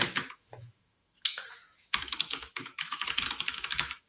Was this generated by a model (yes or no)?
yes